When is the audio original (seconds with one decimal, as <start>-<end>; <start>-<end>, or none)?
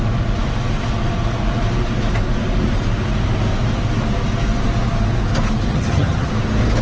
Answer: 0.0-5.7; 6.3-6.8